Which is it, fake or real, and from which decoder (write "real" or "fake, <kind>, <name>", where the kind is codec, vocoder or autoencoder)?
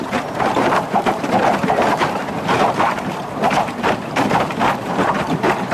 fake, vocoder, BigVGAN v2